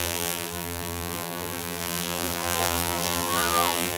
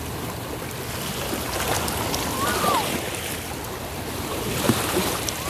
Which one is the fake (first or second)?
first